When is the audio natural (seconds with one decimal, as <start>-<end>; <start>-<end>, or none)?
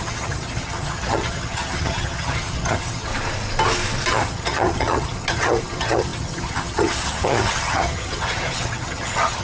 3.1-4.1